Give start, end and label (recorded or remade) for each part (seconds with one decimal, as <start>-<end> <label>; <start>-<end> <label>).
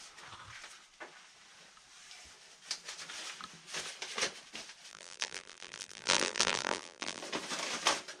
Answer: 0.0-4.9 recorded; 4.9-7.2 remade; 7.2-8.2 recorded